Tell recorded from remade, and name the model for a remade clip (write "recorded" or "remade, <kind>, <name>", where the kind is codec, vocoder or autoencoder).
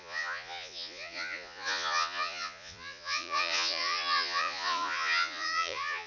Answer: remade, vocoder, Vocos